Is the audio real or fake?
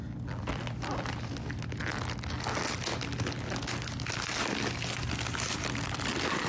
real